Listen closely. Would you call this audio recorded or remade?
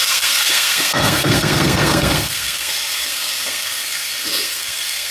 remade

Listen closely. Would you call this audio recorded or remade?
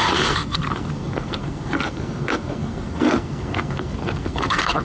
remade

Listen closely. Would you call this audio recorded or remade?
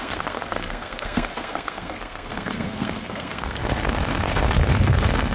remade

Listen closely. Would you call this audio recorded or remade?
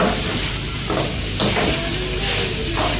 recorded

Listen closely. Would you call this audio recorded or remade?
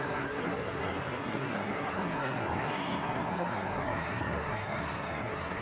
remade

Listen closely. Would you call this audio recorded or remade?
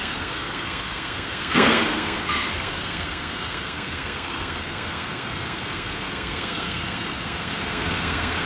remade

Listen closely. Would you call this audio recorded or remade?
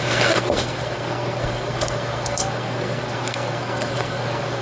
remade